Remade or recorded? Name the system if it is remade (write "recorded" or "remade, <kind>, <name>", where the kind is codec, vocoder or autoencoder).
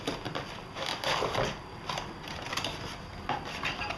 recorded